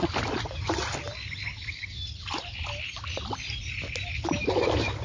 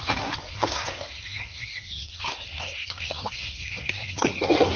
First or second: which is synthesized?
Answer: second